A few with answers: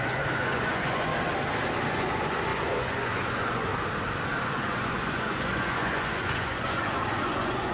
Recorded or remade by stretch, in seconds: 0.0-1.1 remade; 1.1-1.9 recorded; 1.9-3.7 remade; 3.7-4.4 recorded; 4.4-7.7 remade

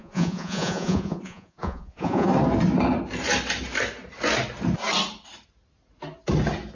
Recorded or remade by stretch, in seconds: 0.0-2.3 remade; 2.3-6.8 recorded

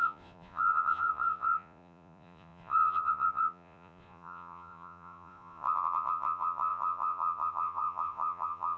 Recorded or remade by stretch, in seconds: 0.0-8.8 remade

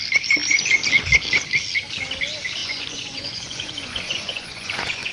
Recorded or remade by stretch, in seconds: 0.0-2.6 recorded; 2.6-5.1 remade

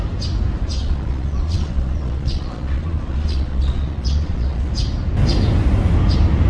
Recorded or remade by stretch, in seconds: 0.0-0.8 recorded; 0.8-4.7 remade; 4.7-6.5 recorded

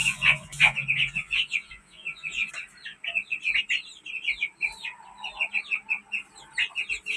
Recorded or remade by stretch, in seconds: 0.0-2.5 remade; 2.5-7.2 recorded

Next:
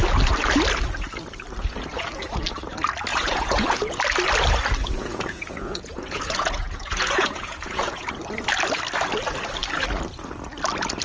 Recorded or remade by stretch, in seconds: 0.0-3.1 recorded; 3.1-4.0 remade; 4.0-4.8 recorded; 4.8-8.1 remade; 8.1-11.0 recorded